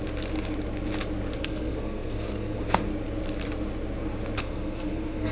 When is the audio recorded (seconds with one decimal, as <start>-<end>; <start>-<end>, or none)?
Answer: 0.0-1.4; 2.9-4.4